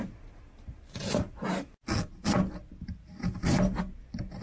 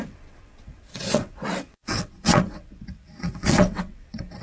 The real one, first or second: first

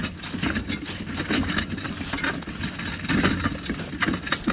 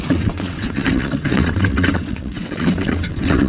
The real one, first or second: first